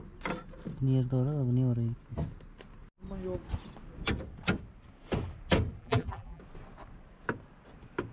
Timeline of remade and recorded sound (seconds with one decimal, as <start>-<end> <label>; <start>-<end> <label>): 0.0-5.8 recorded; 5.8-6.4 remade; 6.4-8.1 recorded